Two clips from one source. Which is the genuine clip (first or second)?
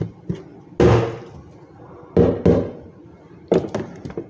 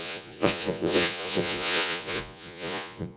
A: first